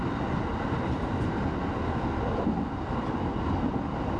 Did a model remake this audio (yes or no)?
no